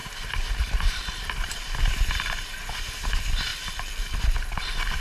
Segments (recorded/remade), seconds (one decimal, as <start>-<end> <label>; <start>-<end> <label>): 0.0-3.5 remade; 3.5-4.2 recorded; 4.2-5.0 remade